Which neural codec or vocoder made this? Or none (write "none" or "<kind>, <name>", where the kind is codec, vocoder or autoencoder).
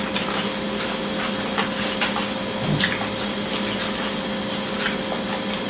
none